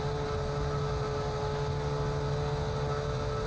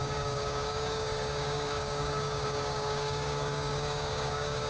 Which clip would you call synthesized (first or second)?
second